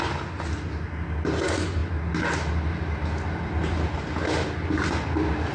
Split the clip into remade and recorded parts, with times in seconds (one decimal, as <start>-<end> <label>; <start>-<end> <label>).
0.0-5.5 recorded